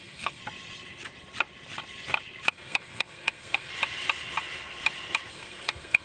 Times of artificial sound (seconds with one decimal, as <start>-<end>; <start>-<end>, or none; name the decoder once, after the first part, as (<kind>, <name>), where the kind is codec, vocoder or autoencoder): 0.0-0.4 (codec, SNAC); 2.5-3.7; 5.3-6.0